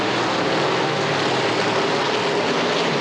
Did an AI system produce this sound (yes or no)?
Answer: no